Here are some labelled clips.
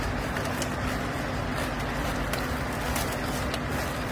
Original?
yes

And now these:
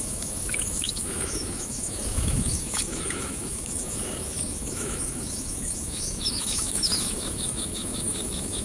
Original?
no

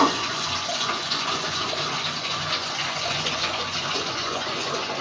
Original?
no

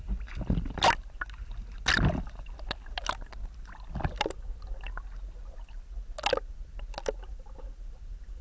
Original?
yes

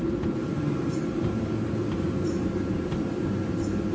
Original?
no